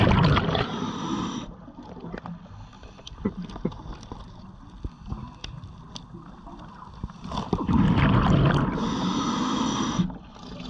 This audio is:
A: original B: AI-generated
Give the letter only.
A